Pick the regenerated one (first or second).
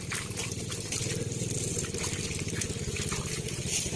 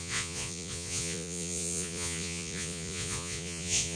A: second